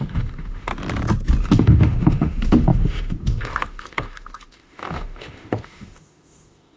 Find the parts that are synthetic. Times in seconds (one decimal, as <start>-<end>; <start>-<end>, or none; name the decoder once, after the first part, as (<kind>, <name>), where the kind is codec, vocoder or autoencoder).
0.0-0.7 (autoencoder, DAC-VAE); 1.4-6.8